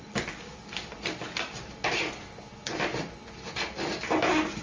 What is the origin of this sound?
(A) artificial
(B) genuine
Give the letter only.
B